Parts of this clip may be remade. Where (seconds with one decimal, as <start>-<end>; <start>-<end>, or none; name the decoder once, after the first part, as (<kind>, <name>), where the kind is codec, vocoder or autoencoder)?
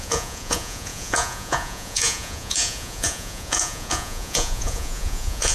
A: 0.0-5.5 (vocoder, Vocos)